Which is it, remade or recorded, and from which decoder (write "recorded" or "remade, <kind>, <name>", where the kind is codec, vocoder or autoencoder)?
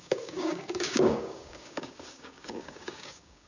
remade, codec, DAC